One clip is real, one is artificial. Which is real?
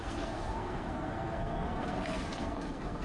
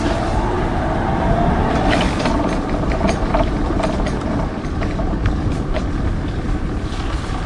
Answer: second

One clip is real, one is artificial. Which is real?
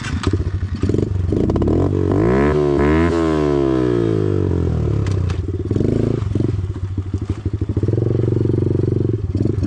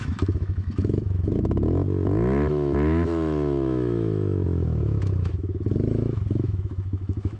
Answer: first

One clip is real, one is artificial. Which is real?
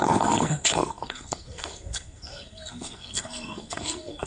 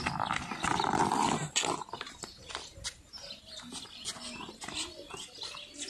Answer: second